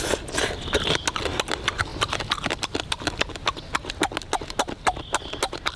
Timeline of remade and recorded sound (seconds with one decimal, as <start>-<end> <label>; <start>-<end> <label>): 0.0-1.9 recorded; 1.9-3.1 remade; 3.1-5.8 recorded

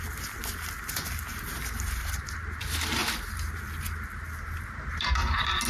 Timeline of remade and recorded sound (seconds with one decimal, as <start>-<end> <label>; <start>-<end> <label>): 0.0-1.3 recorded; 1.3-2.3 remade; 2.3-3.0 recorded; 3.0-3.6 remade; 3.6-5.7 recorded

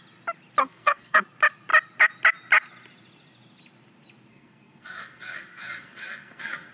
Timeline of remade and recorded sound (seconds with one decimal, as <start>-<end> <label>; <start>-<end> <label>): 0.0-0.6 recorded; 0.6-1.2 remade; 1.2-4.3 recorded; 4.3-6.7 remade

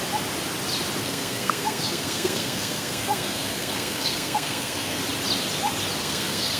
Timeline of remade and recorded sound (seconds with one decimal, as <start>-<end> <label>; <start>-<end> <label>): 0.0-1.0 recorded; 1.0-5.0 remade; 5.0-6.0 recorded; 6.0-6.6 remade